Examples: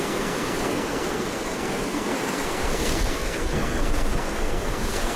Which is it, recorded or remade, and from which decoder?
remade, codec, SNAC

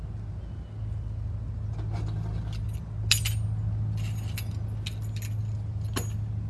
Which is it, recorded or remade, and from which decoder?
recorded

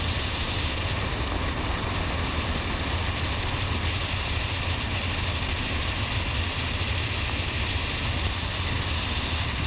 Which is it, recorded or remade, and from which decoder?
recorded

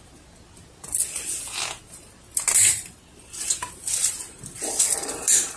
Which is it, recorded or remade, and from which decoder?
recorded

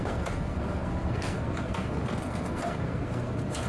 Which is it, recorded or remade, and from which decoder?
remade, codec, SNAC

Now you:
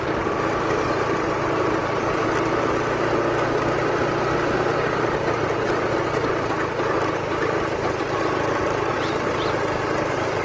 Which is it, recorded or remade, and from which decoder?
recorded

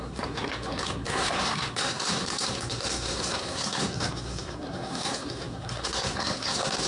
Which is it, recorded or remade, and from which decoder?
remade, codec, SNAC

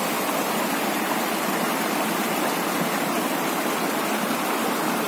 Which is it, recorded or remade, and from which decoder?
recorded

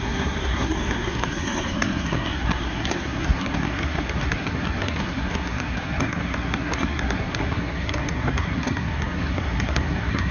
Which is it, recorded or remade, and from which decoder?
remade, codec, SNAC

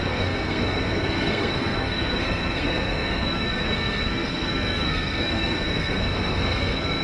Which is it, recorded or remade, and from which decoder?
remade, codec, SNAC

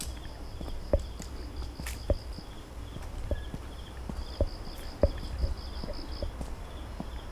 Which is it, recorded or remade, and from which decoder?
recorded